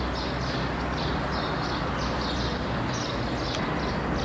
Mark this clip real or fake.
real